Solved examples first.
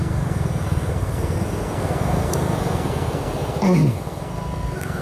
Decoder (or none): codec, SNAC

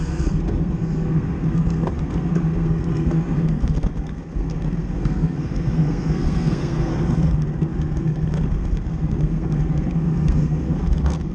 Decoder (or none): codec, SNAC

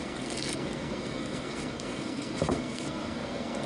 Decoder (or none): codec, SNAC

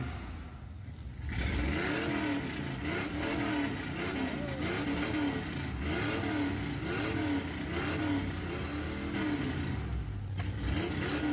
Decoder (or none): none